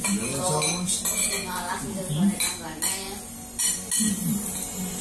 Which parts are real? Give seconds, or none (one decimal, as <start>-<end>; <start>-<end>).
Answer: 0.0-5.0